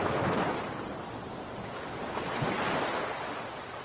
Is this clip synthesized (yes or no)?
no